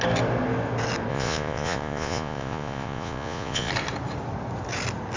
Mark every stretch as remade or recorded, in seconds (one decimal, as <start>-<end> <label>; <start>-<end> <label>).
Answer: 0.0-1.1 recorded; 1.1-3.7 remade; 3.7-5.2 recorded